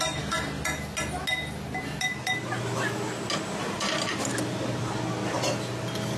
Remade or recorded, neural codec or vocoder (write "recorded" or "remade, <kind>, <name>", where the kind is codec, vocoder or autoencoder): recorded